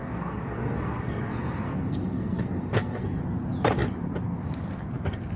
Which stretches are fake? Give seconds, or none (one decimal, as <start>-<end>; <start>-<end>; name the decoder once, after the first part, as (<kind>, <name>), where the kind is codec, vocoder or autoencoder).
0.0-3.2 (codec, SNAC)

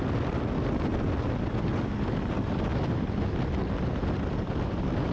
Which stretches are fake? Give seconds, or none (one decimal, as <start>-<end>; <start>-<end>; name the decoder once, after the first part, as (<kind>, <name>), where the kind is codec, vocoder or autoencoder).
none

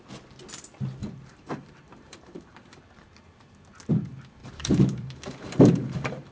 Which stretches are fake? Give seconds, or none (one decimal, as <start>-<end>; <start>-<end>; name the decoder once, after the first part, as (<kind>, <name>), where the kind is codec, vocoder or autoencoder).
1.0-2.8 (vocoder, BigVGAN v2); 4.4-6.3

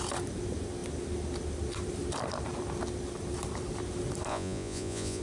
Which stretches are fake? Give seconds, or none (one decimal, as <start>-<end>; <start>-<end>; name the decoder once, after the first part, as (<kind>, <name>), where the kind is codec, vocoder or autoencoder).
4.3-5.2 (vocoder, Vocos)

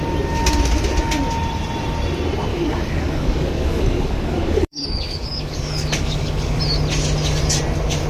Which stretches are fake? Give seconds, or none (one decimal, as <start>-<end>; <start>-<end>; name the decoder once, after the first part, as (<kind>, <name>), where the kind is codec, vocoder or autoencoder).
2.5-6.6 (codec, DAC)

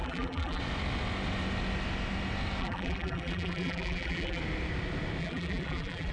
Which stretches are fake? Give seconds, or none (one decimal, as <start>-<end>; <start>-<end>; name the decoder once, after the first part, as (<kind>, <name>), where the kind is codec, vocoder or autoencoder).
0.0-0.6 (vocoder, BigVGAN v2); 2.6-4.4; 5.2-6.1

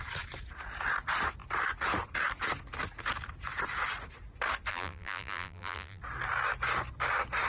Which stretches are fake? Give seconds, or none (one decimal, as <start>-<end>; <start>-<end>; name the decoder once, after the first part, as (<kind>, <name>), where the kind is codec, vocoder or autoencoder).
4.7-6.0 (vocoder, BigVGAN v2)